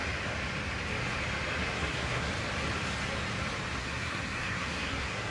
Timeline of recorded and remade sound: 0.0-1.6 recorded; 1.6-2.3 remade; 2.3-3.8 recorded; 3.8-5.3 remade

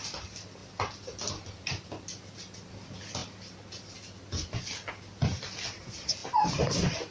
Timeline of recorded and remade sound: 0.0-7.1 recorded

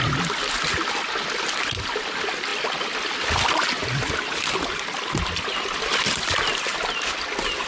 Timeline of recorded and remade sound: 0.0-7.7 recorded

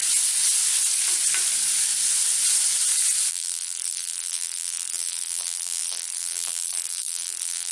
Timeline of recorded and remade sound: 0.0-3.3 recorded; 3.3-7.7 remade

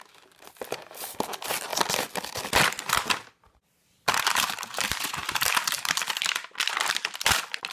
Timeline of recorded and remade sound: 0.0-5.2 recorded; 5.2-6.1 remade; 6.1-7.7 recorded

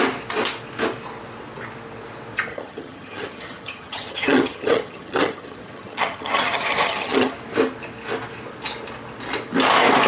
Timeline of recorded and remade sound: 0.0-2.5 recorded; 2.5-7.3 remade; 7.3-10.1 recorded